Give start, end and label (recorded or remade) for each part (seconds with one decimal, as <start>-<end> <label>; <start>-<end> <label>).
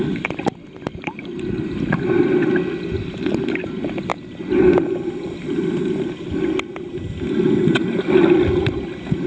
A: 0.0-0.9 recorded; 0.9-1.8 remade; 1.8-4.1 recorded; 4.1-4.6 remade; 4.6-7.8 recorded; 7.8-8.4 remade; 8.4-9.3 recorded